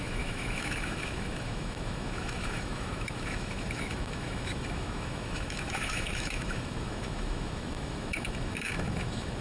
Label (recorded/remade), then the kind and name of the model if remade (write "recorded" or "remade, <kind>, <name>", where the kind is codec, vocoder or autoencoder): remade, autoencoder, DAC-VAE